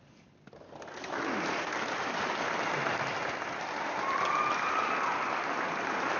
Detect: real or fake real